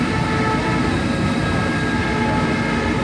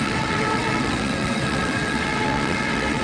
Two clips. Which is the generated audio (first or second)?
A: second